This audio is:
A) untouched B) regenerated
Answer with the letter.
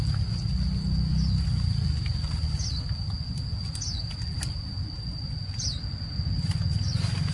A